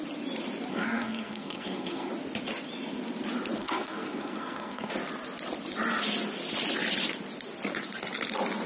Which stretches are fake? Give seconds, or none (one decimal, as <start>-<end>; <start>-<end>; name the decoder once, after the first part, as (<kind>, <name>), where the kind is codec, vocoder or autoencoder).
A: 0.7-2.1 (codec, SNAC); 3.6-4.9

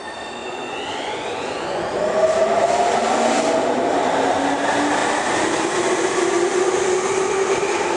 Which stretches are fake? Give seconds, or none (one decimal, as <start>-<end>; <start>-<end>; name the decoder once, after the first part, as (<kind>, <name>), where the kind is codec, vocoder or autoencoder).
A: 0.4-2.0 (vocoder, Vocos)